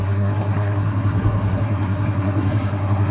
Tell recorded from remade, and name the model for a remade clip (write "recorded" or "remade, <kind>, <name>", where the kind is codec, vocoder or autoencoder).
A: remade, codec, SNAC